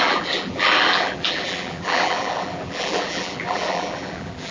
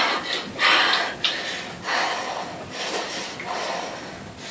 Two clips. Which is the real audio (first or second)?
second